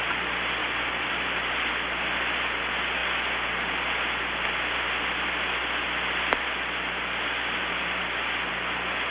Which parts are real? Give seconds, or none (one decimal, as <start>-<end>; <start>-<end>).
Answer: 0.0-0.6; 1.7-9.1

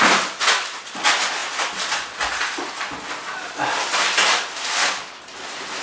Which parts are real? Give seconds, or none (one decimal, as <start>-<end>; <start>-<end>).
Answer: 0.0-5.8

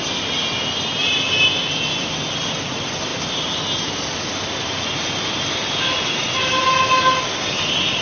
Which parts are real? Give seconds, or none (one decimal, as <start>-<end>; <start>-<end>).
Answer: 0.0-8.0

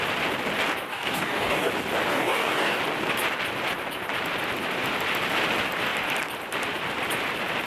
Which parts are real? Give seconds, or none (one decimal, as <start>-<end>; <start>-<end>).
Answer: 0.0-0.9; 1.7-2.1; 2.8-7.7